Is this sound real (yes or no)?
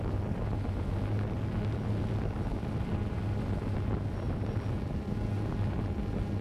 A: yes